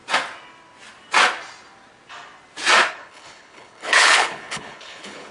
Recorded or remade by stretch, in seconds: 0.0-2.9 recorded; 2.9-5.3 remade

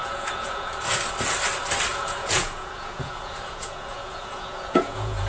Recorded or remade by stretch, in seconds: 0.0-0.7 remade; 0.7-1.9 recorded; 1.9-5.3 remade

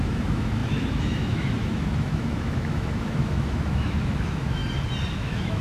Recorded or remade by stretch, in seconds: 0.0-4.6 remade; 4.6-5.1 recorded; 5.1-5.6 remade

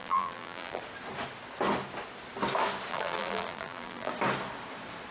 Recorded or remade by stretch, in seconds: 0.0-0.8 remade; 0.8-2.9 recorded; 2.9-4.1 remade; 4.1-5.1 recorded